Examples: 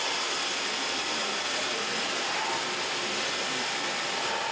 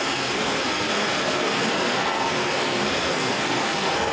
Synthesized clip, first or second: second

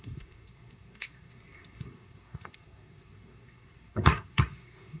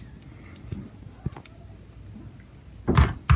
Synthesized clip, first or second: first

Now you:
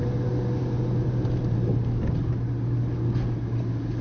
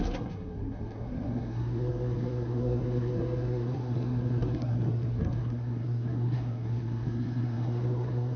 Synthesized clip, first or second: second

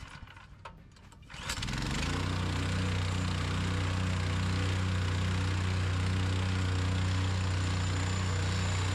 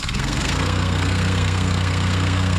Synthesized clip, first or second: second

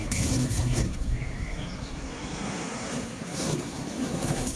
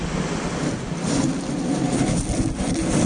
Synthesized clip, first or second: first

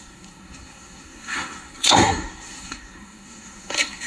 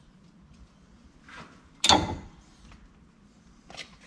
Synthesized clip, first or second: first